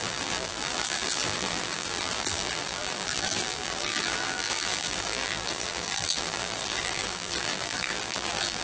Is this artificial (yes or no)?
yes